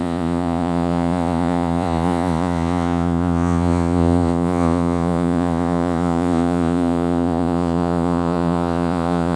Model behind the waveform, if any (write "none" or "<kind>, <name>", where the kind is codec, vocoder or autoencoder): vocoder, Vocos